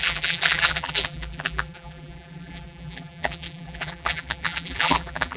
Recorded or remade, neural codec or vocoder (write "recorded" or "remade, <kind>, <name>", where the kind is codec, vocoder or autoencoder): remade, vocoder, BigVGAN v2